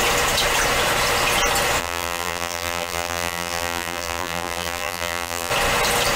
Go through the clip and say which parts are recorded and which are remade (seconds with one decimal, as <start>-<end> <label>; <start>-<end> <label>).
0.0-1.8 recorded; 1.8-5.5 remade; 5.5-6.2 recorded

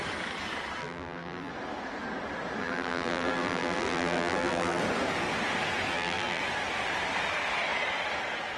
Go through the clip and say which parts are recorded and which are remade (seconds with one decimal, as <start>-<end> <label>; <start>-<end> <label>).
0.0-0.8 recorded; 0.8-1.5 remade; 1.5-2.6 recorded; 2.6-4.8 remade; 4.8-5.9 recorded; 5.9-6.4 remade; 6.4-8.6 recorded